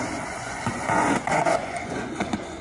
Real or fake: fake